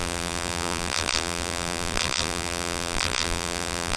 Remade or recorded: remade